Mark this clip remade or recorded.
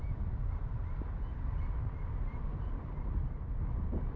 recorded